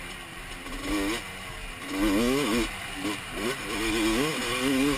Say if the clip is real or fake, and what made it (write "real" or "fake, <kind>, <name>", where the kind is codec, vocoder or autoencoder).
real